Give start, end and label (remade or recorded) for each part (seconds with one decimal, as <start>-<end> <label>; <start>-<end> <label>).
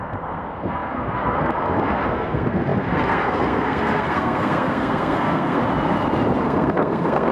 0.0-5.6 remade; 5.6-6.4 recorded; 6.4-7.3 remade